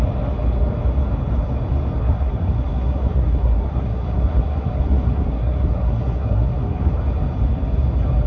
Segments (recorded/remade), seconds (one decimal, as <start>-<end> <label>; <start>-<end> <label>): 0.0-2.0 recorded; 2.0-7.0 remade; 7.0-8.3 recorded

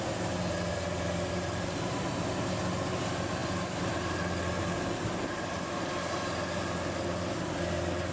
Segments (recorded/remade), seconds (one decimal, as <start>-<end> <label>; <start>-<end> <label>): 0.0-8.1 recorded

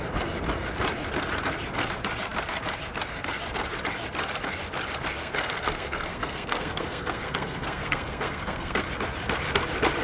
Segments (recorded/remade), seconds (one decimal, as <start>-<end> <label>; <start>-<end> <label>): 0.0-5.2 recorded; 5.2-8.8 remade; 8.8-10.0 recorded

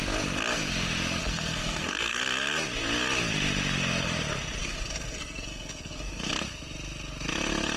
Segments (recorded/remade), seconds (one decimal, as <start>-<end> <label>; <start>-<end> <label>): 0.0-1.2 recorded; 1.2-2.2 remade; 2.2-4.6 recorded; 4.6-6.3 remade; 6.3-7.8 recorded

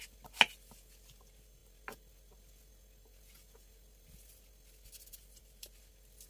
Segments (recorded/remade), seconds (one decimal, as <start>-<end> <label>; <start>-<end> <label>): 0.0-6.3 recorded

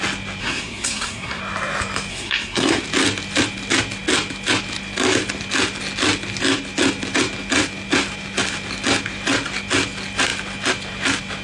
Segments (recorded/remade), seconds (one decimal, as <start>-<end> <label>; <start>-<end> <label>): 0.0-0.4 recorded; 0.4-1.4 remade; 1.4-2.1 recorded; 2.1-2.8 remade; 2.8-11.4 recorded